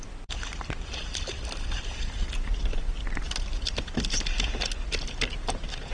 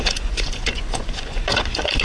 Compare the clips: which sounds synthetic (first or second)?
second